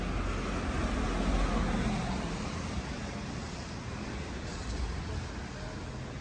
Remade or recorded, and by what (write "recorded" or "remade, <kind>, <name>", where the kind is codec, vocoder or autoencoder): recorded